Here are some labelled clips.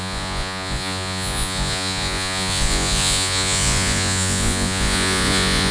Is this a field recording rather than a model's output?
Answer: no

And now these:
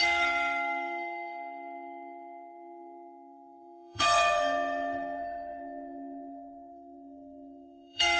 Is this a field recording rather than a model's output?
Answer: no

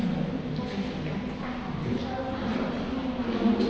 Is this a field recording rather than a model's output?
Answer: yes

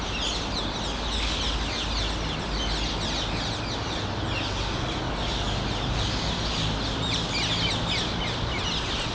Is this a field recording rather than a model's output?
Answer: yes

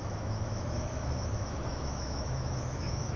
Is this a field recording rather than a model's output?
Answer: no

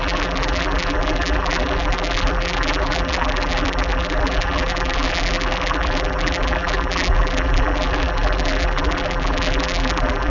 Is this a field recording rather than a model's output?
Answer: no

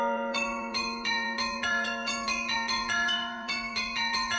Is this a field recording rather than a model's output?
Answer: no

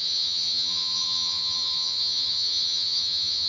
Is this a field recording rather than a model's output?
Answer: no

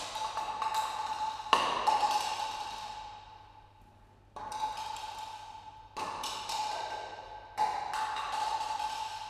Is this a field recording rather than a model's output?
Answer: yes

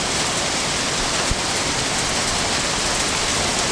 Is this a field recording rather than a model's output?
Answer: yes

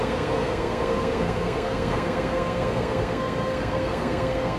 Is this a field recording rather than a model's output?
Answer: no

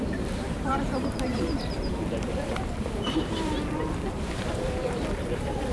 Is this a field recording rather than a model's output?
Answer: no